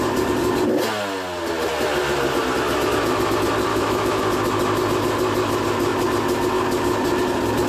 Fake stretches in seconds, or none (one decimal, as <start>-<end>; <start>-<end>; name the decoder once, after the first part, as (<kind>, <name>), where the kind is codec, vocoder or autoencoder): 3.7-4.2 (autoencoder, DAC-VAE)